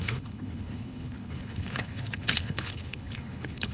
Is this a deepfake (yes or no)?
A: yes